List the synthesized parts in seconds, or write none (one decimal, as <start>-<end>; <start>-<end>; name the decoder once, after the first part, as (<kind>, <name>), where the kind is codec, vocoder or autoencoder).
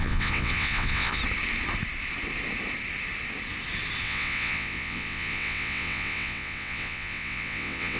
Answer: 0.0-1.2 (vocoder, WaveNeXt); 4.0-8.0